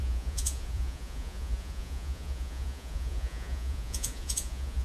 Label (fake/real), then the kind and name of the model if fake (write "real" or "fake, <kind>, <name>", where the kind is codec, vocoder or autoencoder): fake, vocoder, Vocos